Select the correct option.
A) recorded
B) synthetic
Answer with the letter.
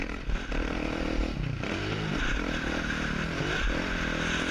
A